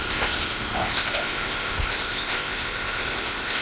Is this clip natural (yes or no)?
no